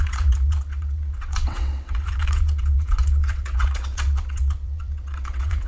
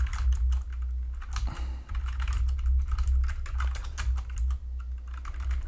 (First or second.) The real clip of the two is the second